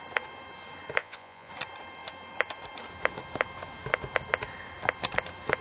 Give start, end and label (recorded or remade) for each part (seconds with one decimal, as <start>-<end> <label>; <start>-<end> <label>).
0.0-1.0 recorded; 1.0-1.5 remade; 1.5-5.6 recorded